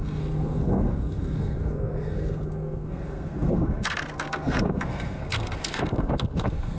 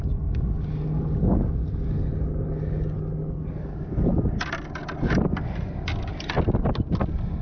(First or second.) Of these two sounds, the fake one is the first